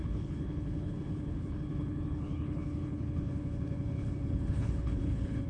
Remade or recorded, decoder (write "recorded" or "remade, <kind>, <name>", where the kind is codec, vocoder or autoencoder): remade, codec, HILCodec